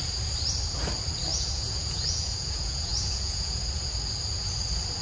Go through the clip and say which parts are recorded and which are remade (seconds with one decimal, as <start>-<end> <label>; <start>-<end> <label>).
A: 0.0-1.3 recorded; 1.3-3.6 remade; 3.6-5.0 recorded